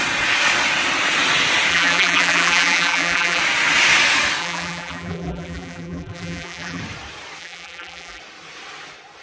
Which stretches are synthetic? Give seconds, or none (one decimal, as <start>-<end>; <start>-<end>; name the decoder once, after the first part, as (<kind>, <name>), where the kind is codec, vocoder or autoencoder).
1.7-3.4 (vocoder, BigVGAN v2); 4.4-6.8; 7.4-8.2